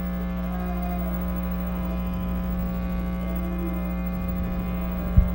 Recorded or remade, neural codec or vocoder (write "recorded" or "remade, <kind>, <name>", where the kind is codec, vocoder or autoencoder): remade, autoencoder, DAC-VAE